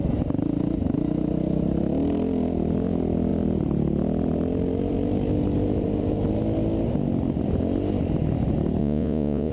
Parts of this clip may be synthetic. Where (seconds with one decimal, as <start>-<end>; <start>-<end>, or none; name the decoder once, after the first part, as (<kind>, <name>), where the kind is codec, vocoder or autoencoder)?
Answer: 8.8-9.5 (vocoder, Vocos)